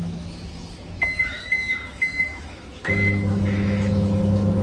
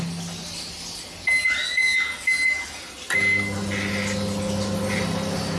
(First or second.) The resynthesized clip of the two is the first